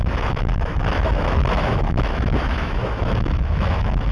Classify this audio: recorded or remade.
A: remade